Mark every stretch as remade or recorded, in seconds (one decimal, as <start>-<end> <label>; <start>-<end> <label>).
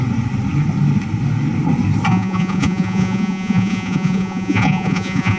0.0-2.1 recorded; 2.1-5.4 remade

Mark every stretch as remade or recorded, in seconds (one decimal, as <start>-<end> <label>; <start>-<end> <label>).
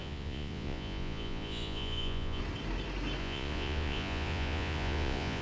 0.0-2.4 remade; 2.4-3.2 recorded; 3.2-5.4 remade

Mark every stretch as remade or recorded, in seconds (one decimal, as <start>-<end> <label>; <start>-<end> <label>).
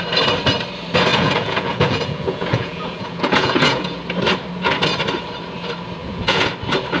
0.0-1.1 recorded; 1.1-4.0 remade; 4.0-6.0 recorded; 6.0-6.5 remade; 6.5-7.0 recorded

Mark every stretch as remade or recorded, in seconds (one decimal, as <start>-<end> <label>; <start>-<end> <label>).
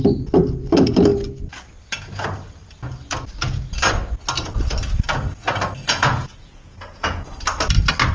0.0-5.8 recorded; 5.8-7.3 remade; 7.3-8.1 recorded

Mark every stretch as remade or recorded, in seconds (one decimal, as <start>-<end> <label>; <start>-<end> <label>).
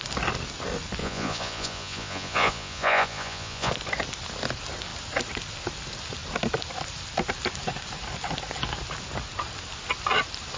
0.0-1.0 recorded; 1.0-3.7 remade; 3.7-10.6 recorded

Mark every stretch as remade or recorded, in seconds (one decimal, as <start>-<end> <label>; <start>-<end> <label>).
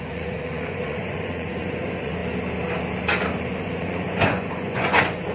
0.0-2.2 remade; 2.2-3.6 recorded; 3.6-5.3 remade